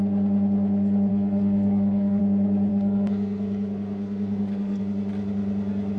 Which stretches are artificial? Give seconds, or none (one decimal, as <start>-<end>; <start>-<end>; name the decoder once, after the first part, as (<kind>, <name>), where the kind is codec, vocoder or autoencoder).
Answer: 1.1-2.2 (codec, SNAC); 2.7-4.8